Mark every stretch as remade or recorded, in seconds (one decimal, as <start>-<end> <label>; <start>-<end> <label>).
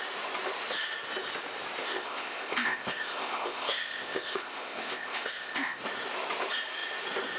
0.0-1.8 recorded; 1.8-5.8 remade; 5.8-7.4 recorded